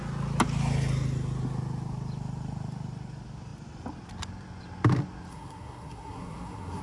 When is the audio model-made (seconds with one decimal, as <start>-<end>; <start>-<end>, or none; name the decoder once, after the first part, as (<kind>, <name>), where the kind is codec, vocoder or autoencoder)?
5.3-6.8 (codec, SNAC)